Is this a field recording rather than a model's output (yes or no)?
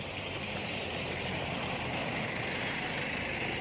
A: no